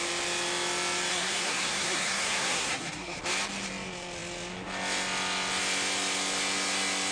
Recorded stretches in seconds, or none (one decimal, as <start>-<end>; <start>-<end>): 0.0-1.1; 3.2-7.1